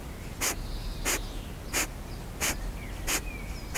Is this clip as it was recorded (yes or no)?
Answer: yes